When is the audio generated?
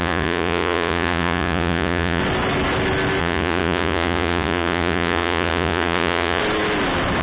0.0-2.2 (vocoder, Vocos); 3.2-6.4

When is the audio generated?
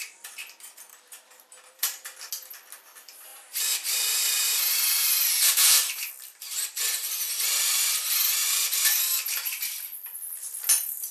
0.9-2.3 (vocoder, BigVGAN v2); 3.3-6.1; 8.4-9.6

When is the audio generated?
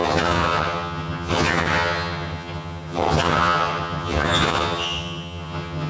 0.0-5.9 (vocoder, HiFi-GAN)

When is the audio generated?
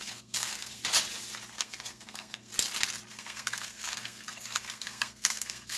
0.0-0.8 (codec, SNAC); 1.5-2.5; 3.1-5.8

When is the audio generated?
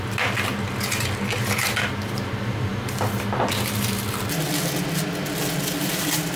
none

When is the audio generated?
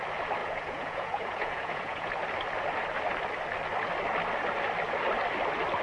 0.4-2.1 (vocoder, Vocos)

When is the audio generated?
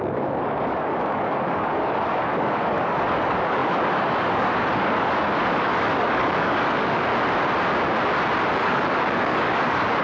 0.0-7.1 (codec, DAC); 8.6-10.0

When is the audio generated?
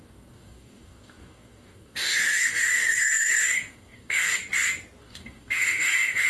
0.0-4.4 (codec, DAC); 5.0-6.3